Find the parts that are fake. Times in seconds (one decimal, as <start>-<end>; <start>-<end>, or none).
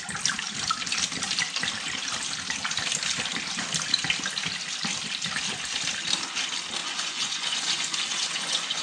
6.8-8.8